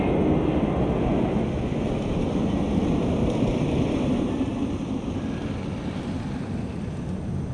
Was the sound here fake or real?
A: real